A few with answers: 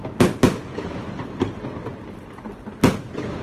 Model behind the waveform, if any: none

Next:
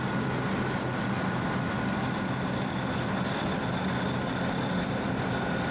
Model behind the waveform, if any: none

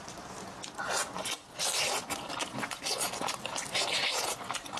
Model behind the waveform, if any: none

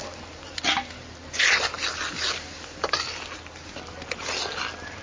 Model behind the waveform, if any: none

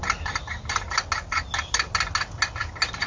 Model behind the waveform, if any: none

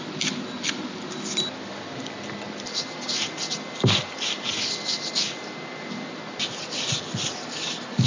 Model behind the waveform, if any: none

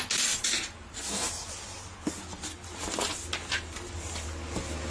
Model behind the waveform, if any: none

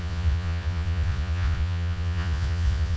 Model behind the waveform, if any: vocoder, Vocos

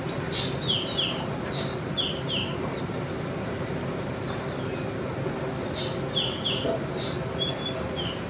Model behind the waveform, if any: none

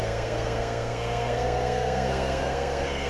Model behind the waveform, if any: codec, SNAC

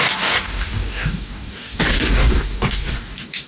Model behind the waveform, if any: codec, DAC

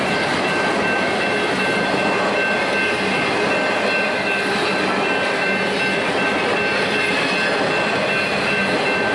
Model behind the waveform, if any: none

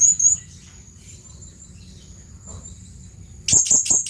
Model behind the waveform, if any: none